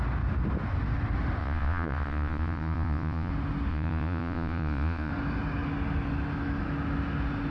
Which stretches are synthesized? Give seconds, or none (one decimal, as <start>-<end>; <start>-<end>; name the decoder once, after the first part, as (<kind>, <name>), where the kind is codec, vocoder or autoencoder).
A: 1.4-3.3 (vocoder, Vocos); 3.7-5.1